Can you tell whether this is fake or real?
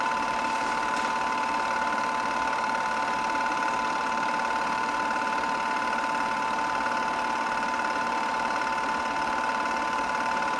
fake